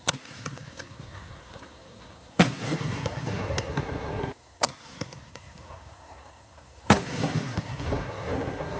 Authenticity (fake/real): fake